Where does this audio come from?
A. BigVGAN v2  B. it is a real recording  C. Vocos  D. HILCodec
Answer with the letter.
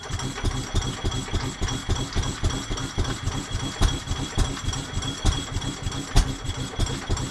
B